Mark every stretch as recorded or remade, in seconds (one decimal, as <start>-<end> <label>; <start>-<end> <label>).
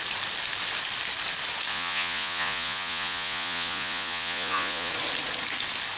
0.0-1.7 recorded; 1.7-4.9 remade; 4.9-6.0 recorded